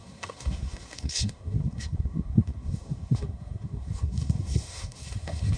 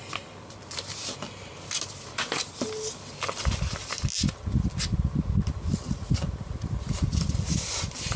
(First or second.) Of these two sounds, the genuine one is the second